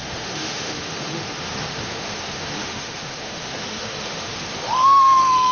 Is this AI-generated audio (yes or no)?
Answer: yes